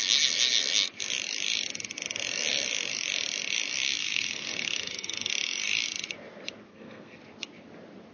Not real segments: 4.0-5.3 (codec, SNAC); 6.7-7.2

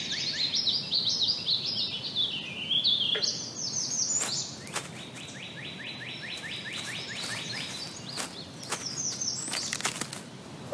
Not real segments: none